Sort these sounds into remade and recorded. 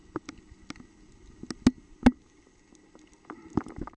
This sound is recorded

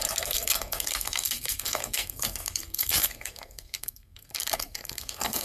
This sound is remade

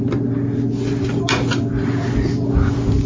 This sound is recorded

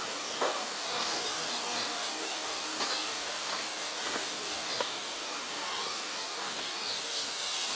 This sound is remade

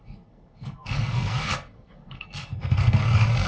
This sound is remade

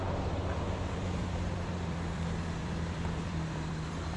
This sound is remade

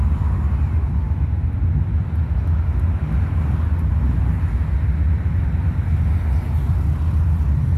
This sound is recorded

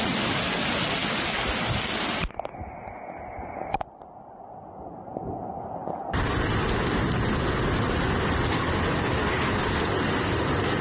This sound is recorded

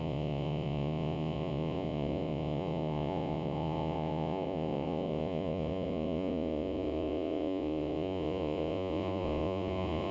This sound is remade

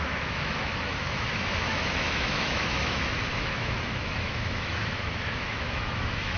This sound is remade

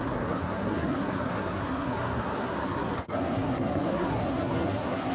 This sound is remade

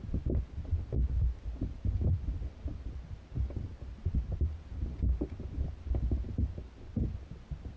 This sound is recorded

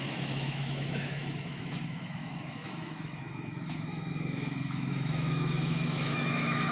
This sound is remade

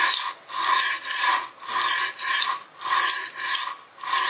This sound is recorded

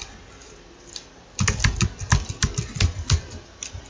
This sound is recorded